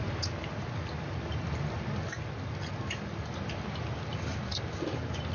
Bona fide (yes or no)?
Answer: yes